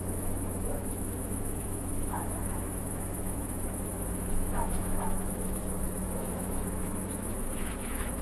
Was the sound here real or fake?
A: fake